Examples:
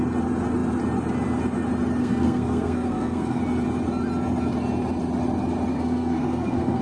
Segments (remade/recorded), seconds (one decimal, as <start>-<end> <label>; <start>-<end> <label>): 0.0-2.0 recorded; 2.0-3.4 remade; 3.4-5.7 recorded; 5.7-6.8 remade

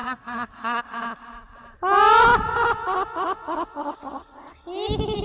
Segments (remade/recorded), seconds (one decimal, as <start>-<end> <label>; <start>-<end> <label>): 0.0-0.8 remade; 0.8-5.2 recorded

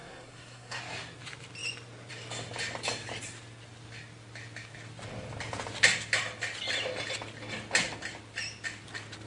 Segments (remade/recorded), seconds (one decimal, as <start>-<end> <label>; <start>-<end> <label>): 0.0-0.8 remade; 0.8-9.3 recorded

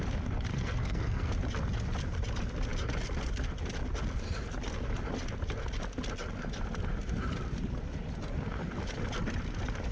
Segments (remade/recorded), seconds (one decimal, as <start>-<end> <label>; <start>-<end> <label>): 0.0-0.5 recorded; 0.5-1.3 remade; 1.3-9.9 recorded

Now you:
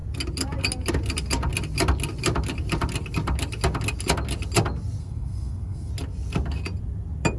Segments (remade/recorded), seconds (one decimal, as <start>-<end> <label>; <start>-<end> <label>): 0.0-5.0 recorded; 5.0-5.9 remade; 5.9-7.4 recorded